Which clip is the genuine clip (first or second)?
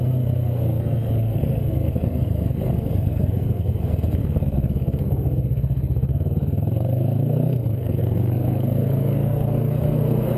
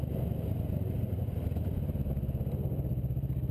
second